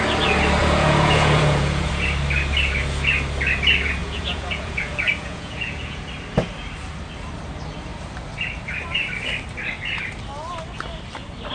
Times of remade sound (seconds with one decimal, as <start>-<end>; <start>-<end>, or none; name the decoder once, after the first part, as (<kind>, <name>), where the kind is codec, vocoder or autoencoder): 0.6-1.9 (vocoder, Vocos); 4.0-6.1